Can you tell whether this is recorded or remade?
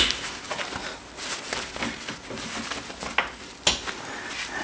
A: recorded